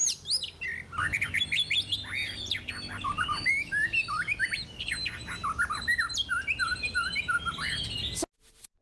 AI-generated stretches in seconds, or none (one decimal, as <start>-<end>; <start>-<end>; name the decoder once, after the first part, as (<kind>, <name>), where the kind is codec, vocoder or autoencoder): none